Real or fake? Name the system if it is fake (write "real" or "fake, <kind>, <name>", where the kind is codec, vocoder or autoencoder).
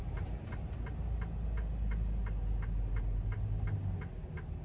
real